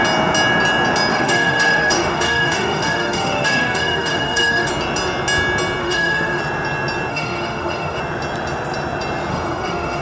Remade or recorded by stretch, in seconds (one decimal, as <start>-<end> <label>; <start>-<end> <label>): 0.0-1.1 recorded; 1.1-4.7 remade; 4.7-5.8 recorded; 5.8-6.4 remade; 6.4-7.1 recorded; 7.1-8.0 remade; 8.0-9.3 recorded; 9.3-10.0 remade